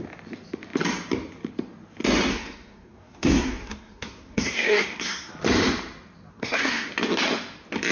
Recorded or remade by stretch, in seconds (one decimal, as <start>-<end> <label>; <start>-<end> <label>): 0.0-2.3 recorded; 2.3-5.3 remade; 5.3-6.3 recorded; 6.3-6.9 remade; 6.9-7.9 recorded